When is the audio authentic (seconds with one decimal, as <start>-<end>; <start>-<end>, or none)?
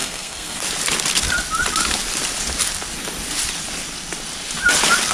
0.6-5.1